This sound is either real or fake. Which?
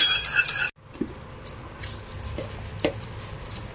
real